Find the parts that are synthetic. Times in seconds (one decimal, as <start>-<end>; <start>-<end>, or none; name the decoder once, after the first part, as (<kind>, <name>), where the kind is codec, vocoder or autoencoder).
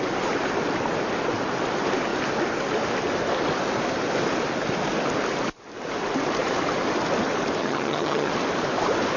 7.6-8.3 (vocoder, HiFi-GAN)